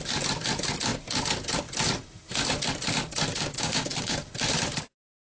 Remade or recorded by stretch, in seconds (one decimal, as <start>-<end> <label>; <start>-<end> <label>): 0.0-3.3 recorded; 3.3-4.2 remade; 4.2-5.2 recorded